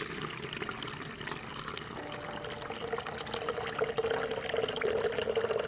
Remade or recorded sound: recorded